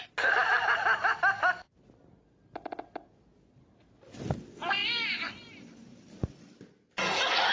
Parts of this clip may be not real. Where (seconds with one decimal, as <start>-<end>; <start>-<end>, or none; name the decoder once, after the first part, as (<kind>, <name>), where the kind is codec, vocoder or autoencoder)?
none